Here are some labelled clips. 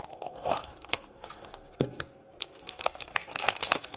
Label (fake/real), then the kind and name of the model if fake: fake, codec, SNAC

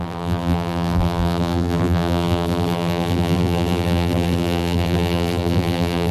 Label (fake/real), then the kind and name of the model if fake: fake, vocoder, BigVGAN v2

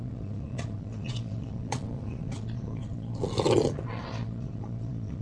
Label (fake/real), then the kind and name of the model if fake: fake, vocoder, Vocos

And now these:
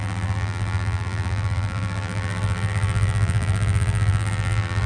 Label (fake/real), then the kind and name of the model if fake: fake, vocoder, BigVGAN v2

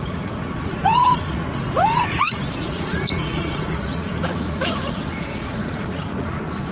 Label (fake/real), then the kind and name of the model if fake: fake, vocoder, Vocos